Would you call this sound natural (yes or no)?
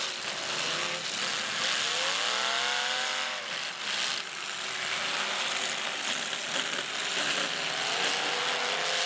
yes